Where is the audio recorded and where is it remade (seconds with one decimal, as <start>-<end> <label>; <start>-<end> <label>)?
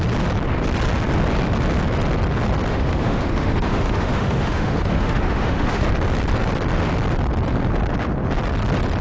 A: 0.0-2.7 recorded; 2.7-5.8 remade; 5.8-9.0 recorded